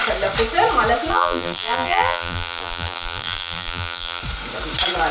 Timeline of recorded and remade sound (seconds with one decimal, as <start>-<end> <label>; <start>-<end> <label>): 0.0-1.1 recorded; 1.1-4.2 remade; 4.2-5.1 recorded